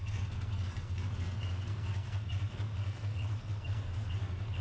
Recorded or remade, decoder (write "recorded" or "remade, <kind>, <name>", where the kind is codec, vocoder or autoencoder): remade, codec, SNAC